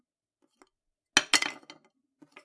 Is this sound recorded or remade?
recorded